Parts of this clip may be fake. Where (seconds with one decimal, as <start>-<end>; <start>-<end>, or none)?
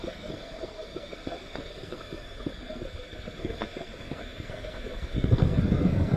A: 0.0-6.2